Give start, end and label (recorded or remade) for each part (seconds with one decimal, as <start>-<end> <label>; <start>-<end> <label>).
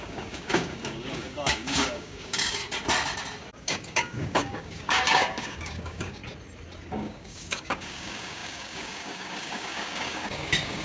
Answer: 0.0-2.6 remade; 2.6-3.5 recorded; 3.5-6.2 remade; 6.2-6.9 recorded; 6.9-10.8 remade